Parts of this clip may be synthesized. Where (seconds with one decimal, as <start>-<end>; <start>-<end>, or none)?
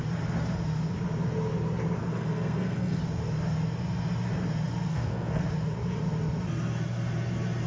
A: 2.0-3.0; 4.9-5.4